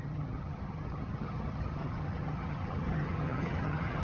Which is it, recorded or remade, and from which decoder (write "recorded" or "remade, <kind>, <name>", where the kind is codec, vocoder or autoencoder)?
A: remade, vocoder, HiFi-GAN